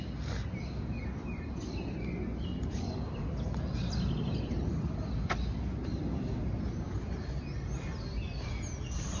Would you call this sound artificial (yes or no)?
no